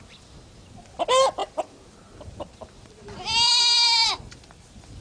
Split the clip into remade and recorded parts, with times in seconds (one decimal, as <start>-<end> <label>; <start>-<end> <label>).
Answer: 0.0-5.0 recorded